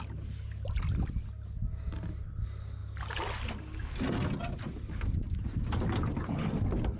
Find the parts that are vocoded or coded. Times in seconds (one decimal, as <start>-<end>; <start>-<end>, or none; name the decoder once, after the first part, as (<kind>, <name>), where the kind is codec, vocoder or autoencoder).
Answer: none